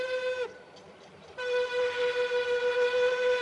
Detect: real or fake real